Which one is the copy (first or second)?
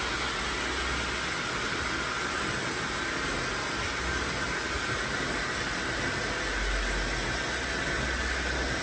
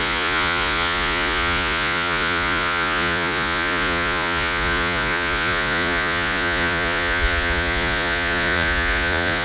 second